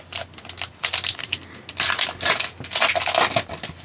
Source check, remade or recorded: recorded